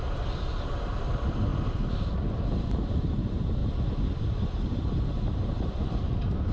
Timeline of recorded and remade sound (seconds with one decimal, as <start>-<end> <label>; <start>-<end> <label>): 0.0-1.5 remade; 1.5-2.3 recorded; 2.3-3.6 remade; 3.6-5.2 recorded; 5.2-6.5 remade